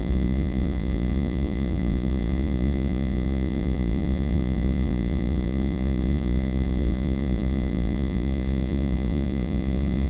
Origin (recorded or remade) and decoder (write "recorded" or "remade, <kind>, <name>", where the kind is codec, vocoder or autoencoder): remade, vocoder, Vocos